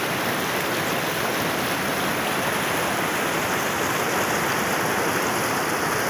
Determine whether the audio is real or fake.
real